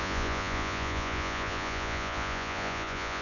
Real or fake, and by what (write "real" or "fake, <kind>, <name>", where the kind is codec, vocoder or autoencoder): fake, vocoder, Vocos